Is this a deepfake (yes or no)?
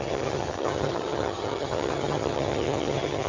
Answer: yes